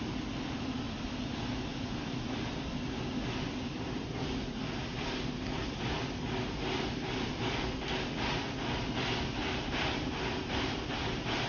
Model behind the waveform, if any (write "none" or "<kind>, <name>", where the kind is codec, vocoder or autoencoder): none